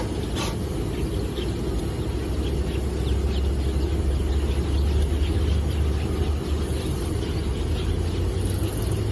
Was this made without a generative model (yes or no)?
yes